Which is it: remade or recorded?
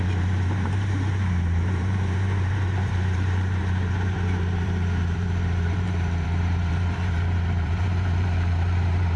remade